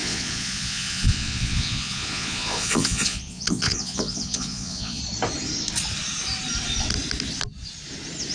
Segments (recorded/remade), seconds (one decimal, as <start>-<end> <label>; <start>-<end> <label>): 0.0-5.0 remade; 5.0-8.3 recorded